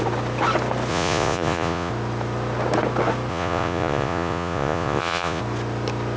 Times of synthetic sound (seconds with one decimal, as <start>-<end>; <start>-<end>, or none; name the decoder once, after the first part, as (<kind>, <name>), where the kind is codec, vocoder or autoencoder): 0.9-1.9 (vocoder, Vocos); 3.3-5.4